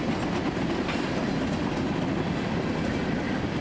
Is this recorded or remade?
recorded